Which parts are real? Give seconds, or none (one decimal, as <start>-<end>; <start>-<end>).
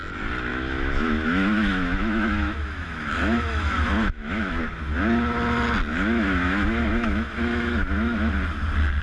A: 0.0-0.5; 4.6-5.9; 8.3-9.0